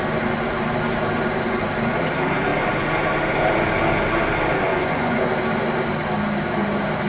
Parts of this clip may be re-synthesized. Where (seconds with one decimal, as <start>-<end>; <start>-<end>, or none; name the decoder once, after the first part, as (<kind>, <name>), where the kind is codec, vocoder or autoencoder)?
4.7-5.3 (vocoder, Vocos)